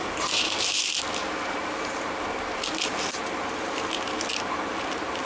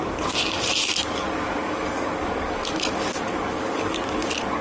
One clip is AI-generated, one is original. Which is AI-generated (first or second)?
second